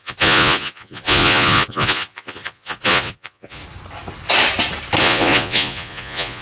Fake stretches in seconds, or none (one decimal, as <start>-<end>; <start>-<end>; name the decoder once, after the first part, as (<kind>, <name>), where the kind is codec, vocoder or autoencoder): 0.0-3.6 (vocoder, Vocos); 5.0-6.4